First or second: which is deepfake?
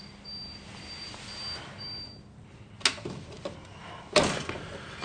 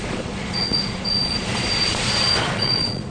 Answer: second